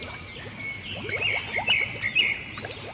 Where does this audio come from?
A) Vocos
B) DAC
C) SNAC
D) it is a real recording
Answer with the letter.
D